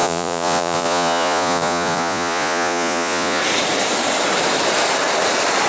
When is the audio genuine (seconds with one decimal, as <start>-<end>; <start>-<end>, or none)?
3.4-5.7